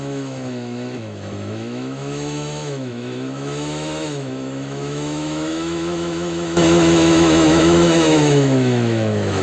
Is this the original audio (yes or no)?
no